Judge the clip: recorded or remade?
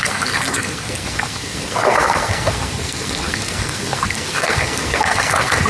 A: remade